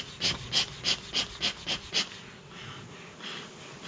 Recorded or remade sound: recorded